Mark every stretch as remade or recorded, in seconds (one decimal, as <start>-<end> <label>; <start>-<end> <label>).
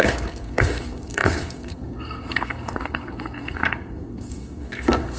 0.0-5.2 remade